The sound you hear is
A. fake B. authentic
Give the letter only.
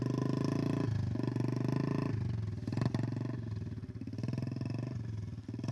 B